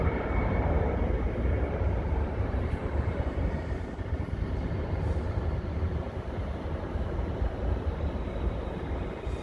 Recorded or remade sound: remade